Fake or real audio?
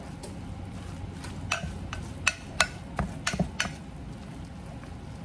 real